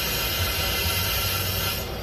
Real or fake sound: real